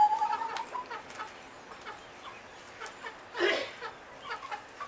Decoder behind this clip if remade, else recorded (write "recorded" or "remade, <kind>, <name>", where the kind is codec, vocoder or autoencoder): recorded